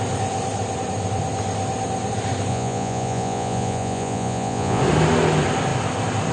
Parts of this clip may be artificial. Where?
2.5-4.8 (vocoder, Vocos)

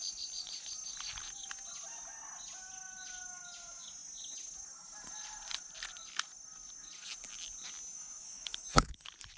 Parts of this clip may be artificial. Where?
7.9-9.0 (autoencoder, DAC-VAE)

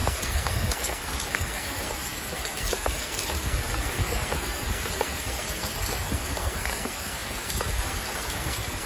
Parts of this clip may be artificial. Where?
0.0-8.9 (codec, SNAC)

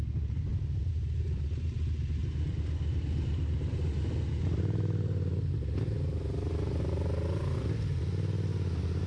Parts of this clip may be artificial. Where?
0.5-1.2 (vocoder, BigVGAN v2); 2.2-6.9

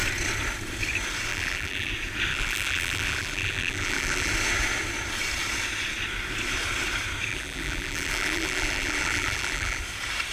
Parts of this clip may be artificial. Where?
1.3-1.9 (vocoder, BigVGAN v2); 2.3-4.3; 7.3-9.8

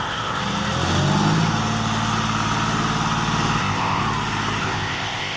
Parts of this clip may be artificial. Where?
0.0-0.4 (codec, ZipCodec); 3.6-4.0; 4.6-5.4

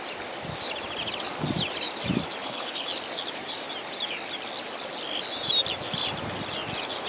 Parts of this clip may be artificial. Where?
2.4-2.9 (codec, HILCodec)